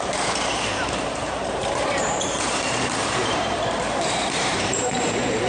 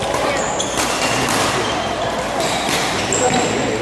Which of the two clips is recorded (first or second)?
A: second